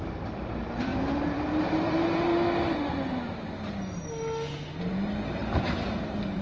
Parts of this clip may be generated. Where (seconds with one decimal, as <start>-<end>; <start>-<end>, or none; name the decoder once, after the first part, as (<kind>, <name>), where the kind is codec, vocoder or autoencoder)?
0.0-2.3 (vocoder, BigVGAN v2); 4.8-6.4